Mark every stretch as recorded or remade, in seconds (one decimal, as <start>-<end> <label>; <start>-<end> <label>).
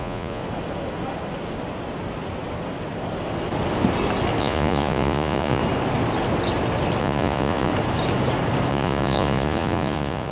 0.0-0.4 remade; 0.4-4.4 recorded; 4.4-5.6 remade; 5.6-7.0 recorded; 7.0-7.7 remade; 7.7-8.7 recorded; 8.7-10.3 remade